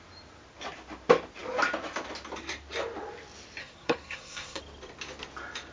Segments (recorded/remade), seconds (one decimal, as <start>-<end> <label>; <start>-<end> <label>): 0.0-3.6 recorded; 3.6-4.6 remade; 4.6-5.7 recorded